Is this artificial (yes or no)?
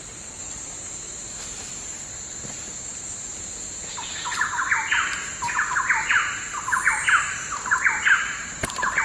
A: yes